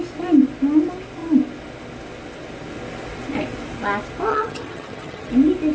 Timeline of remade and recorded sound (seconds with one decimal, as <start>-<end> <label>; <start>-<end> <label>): 0.0-4.3 recorded; 4.3-5.3 remade; 5.3-5.7 recorded